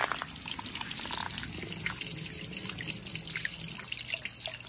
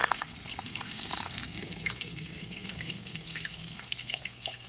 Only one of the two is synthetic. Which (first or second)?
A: second